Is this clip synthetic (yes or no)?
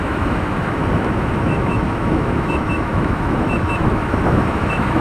yes